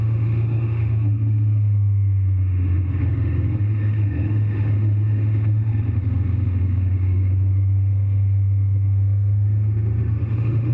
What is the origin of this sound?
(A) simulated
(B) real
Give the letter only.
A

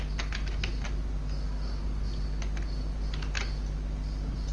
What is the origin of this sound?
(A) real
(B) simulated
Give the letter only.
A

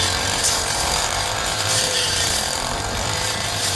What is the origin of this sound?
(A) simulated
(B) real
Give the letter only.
A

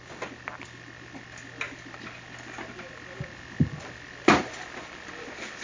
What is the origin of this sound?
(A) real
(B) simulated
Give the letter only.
A